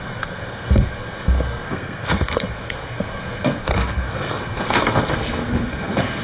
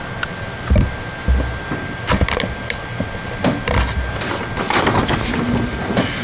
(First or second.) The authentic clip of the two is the second